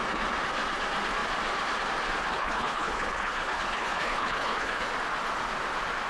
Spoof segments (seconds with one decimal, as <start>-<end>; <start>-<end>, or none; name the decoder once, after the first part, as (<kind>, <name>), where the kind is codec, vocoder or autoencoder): 2.3-4.9 (codec, HILCodec)